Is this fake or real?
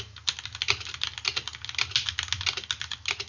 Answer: real